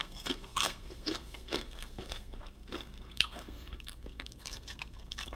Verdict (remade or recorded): remade